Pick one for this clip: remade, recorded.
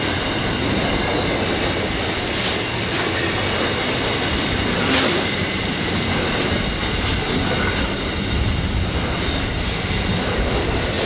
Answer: recorded